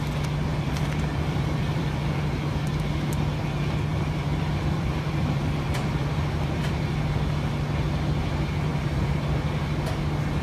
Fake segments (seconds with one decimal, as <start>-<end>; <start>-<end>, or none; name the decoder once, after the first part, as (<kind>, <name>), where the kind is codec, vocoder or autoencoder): 0.5-2.3 (vocoder, BigVGAN v2); 3.9-6.9; 8.7-9.3

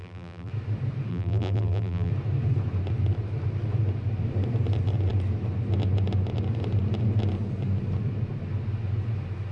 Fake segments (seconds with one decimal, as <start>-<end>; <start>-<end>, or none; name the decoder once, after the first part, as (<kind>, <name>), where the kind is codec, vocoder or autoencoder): 0.0-0.5 (vocoder, BigVGAN v2); 1.1-2.1